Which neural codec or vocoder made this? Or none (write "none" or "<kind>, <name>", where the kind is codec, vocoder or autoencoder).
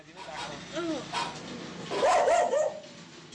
none